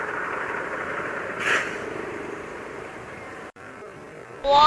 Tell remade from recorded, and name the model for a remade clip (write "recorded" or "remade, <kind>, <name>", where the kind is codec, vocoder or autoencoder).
remade, vocoder, BigVGAN v2